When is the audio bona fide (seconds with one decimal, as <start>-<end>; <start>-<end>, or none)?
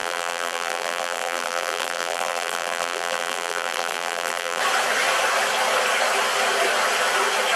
4.6-7.6